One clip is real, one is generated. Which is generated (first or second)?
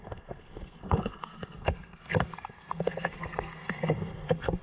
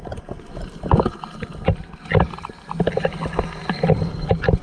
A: first